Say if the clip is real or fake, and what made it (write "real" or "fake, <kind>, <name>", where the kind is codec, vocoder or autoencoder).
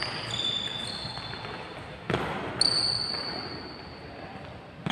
real